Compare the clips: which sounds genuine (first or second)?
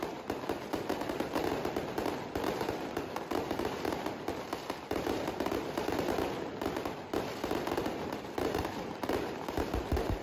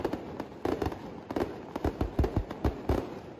second